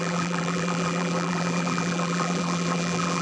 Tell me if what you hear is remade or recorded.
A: remade